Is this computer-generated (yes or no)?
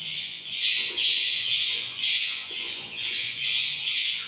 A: yes